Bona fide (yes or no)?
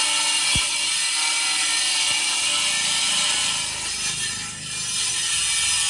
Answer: yes